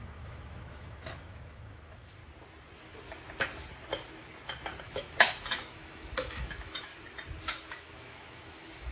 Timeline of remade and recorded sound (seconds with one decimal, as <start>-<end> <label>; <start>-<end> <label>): 0.0-2.2 remade; 2.2-4.8 recorded; 4.8-6.9 remade; 6.9-7.4 recorded; 7.4-8.9 remade